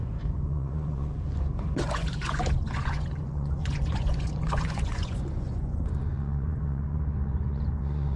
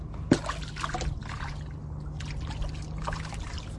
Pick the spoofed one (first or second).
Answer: first